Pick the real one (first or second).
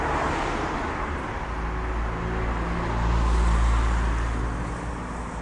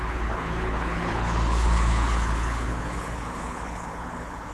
first